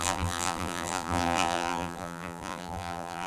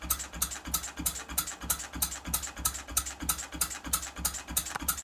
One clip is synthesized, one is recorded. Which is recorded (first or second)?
second